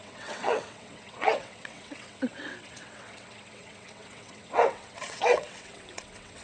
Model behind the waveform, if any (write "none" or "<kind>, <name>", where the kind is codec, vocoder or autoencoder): vocoder, WaveNeXt